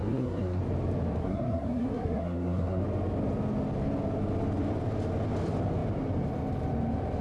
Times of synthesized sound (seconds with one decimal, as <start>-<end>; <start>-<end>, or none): 0.0-0.6; 1.2-2.8